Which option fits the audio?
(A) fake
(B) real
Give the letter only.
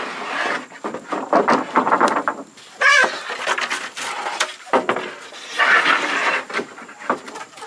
B